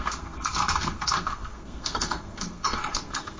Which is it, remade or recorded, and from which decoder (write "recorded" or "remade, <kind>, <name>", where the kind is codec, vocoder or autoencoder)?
remade, codec, SNAC